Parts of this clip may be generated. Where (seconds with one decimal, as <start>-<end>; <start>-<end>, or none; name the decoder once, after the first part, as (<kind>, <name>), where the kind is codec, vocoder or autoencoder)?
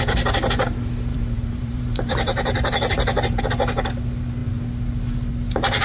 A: 1.1-3.4 (vocoder, BigVGAN v2)